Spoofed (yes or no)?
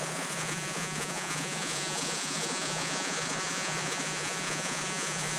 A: yes